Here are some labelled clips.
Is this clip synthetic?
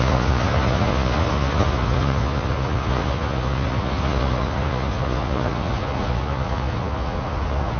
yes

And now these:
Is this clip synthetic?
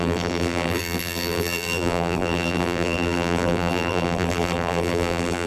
yes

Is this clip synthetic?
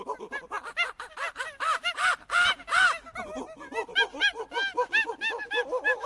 no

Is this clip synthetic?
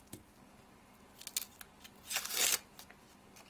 no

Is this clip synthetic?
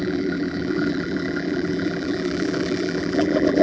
yes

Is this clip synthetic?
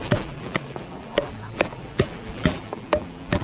yes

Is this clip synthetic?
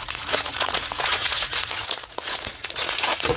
yes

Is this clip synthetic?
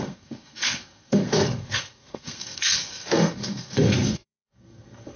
yes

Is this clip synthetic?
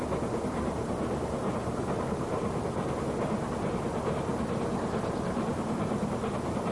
no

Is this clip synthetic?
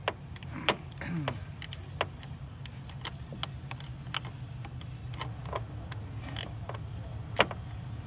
no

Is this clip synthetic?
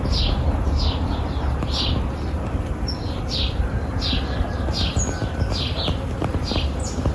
no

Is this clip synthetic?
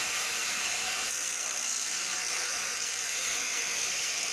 yes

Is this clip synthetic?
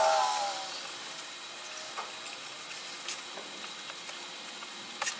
no